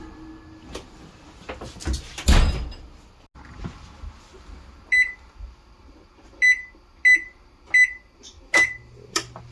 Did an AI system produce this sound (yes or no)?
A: no